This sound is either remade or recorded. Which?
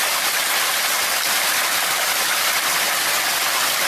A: recorded